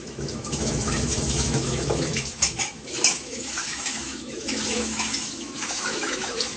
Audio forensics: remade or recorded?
remade